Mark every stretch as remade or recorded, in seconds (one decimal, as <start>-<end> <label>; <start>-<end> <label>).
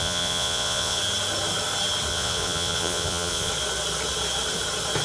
0.0-1.0 remade; 1.0-2.1 recorded; 2.1-3.5 remade; 3.5-5.0 recorded